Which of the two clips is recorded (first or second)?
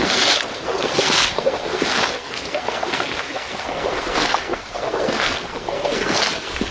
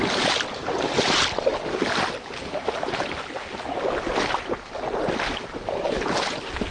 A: second